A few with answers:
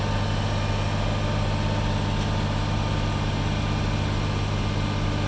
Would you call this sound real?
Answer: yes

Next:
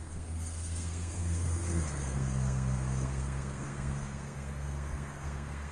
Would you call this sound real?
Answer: no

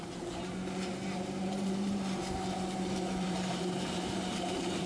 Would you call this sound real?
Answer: no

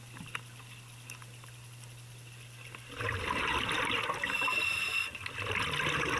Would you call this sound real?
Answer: yes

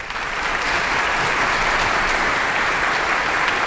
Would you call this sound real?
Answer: yes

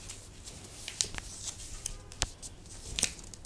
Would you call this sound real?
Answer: yes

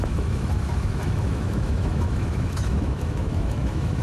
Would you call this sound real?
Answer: no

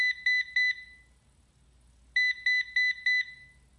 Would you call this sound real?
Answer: yes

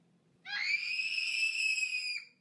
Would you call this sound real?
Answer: yes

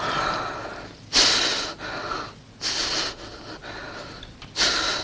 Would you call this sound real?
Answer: yes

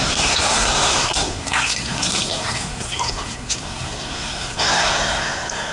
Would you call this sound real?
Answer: no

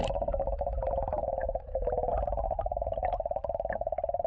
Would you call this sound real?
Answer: yes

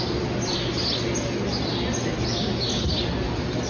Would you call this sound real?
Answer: yes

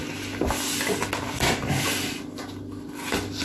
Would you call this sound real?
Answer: yes